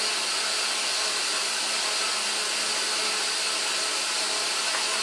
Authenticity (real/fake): real